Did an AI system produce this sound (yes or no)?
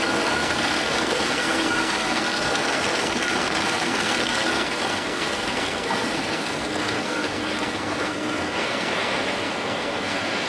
yes